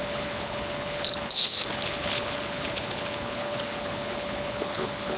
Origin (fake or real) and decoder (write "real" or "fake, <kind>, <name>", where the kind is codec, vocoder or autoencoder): fake, codec, HILCodec